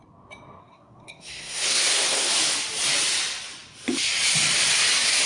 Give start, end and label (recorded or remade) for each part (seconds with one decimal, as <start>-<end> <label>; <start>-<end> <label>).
0.0-0.6 recorded; 0.6-2.3 remade; 2.3-5.3 recorded